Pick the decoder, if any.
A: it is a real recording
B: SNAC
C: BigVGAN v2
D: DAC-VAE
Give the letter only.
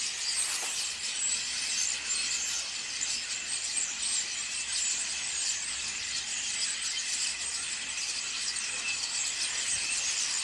A